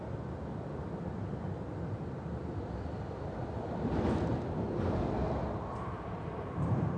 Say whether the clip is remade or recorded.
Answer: recorded